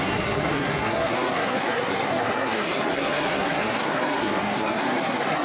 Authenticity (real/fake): fake